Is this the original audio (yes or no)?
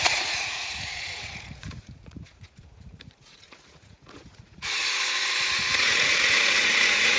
no